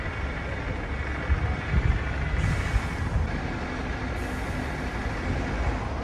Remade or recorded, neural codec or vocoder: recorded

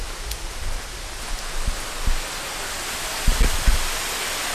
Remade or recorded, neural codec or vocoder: recorded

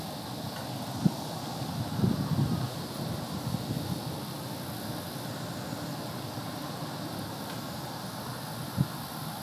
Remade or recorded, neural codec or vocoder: recorded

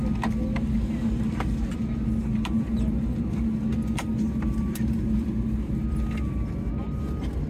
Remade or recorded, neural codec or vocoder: recorded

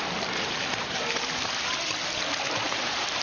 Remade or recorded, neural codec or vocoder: recorded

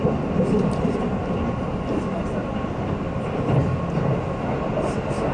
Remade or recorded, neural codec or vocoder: recorded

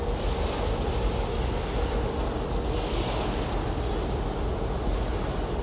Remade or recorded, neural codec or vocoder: recorded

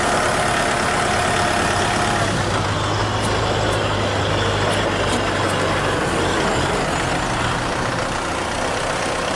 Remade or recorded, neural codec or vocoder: recorded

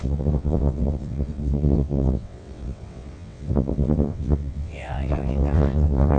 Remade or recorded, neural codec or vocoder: remade, vocoder, WaveNeXt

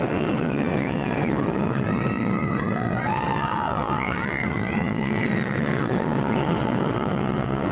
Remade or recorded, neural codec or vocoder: remade, vocoder, WaveNeXt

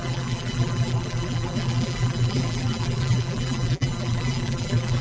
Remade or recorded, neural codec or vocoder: remade, vocoder, BigVGAN v2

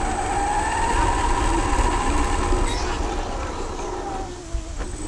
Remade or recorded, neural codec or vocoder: recorded